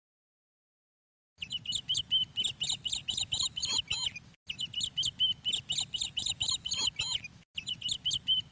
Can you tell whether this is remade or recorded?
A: recorded